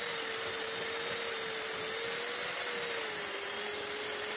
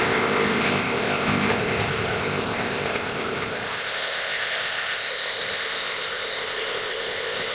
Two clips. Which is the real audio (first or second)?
first